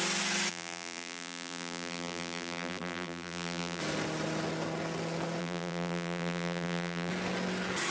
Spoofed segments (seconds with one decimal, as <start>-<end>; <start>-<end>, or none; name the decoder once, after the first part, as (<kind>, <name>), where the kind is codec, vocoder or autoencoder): 0.5-3.8 (vocoder, BigVGAN v2); 5.4-7.1